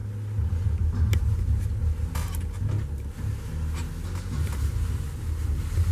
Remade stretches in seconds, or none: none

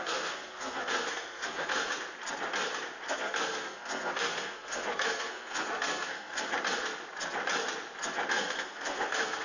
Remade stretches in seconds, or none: 0.0-1.8 (codec, SNAC); 3.1-6.5; 8.3-9.4

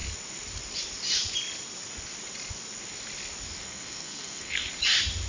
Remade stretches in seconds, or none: 3.6-4.7 (codec, SNAC)

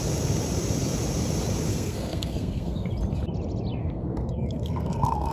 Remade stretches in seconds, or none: 1.7-2.9 (codec, SNAC); 3.8-5.3